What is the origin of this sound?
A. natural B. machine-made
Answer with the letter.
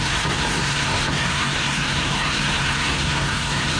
B